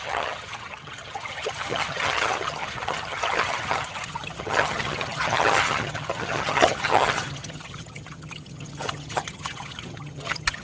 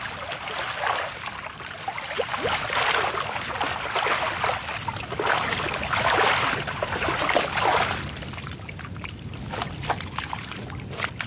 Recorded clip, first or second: second